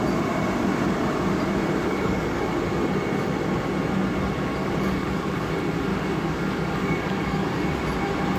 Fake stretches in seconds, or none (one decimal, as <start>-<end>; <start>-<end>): 1.9-2.5; 4.6-5.5; 5.9-7.7